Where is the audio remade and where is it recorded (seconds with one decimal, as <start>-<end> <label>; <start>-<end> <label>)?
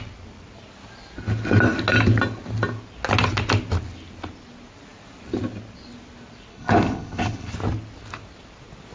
0.0-6.5 recorded; 6.5-7.5 remade; 7.5-8.9 recorded